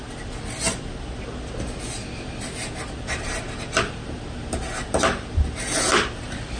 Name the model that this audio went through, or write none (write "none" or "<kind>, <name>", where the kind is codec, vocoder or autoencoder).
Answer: none